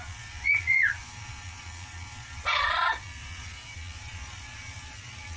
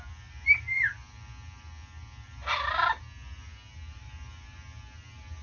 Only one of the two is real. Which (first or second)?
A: second